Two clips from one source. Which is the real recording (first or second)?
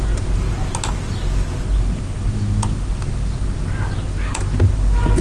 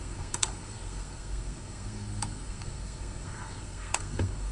first